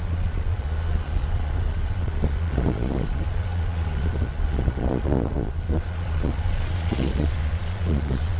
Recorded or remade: remade